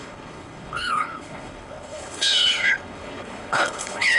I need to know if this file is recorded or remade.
remade